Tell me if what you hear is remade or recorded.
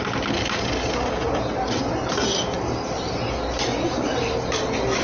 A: recorded